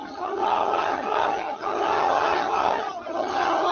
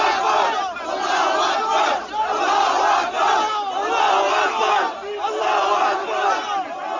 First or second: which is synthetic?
first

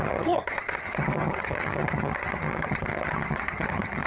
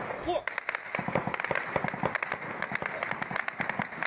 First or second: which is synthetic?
first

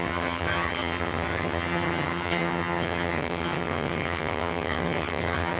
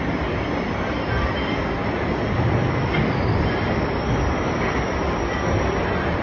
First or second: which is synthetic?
first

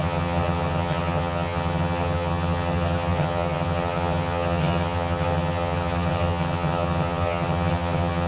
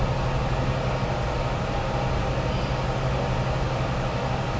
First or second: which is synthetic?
first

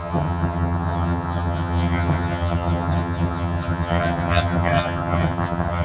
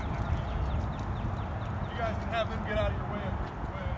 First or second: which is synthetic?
first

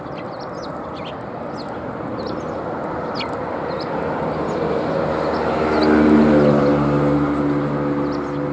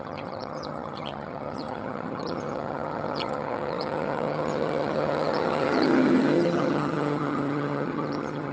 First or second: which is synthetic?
second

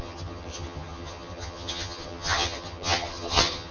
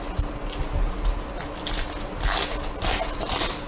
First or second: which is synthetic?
first